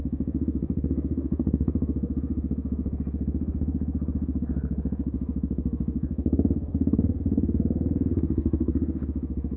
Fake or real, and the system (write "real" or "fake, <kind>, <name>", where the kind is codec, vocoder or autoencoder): fake, codec, SNAC